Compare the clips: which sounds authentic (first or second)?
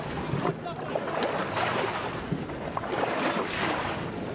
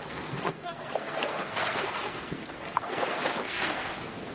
first